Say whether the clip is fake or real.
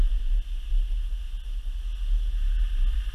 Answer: real